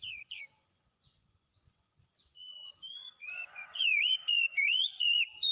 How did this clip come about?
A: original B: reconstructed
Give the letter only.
B